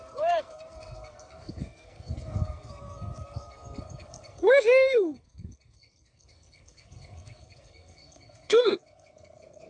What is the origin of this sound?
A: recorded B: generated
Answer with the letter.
B